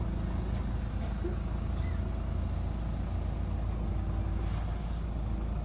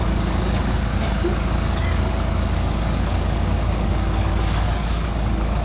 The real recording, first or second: first